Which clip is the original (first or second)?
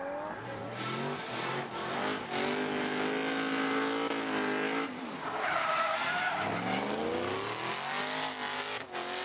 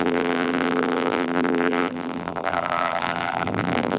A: first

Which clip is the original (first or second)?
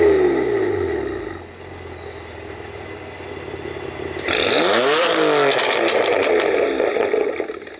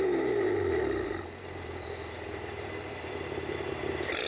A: first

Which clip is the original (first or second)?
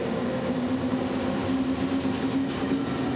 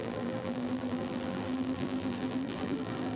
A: first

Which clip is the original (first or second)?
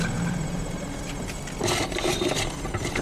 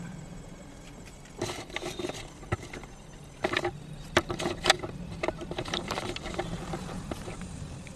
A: first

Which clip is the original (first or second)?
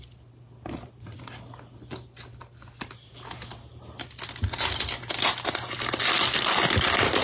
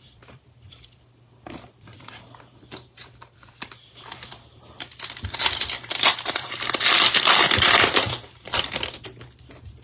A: first